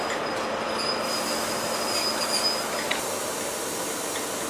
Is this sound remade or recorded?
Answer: recorded